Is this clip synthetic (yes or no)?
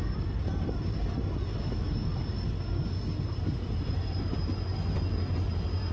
no